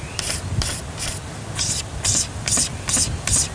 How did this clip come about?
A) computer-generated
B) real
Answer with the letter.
A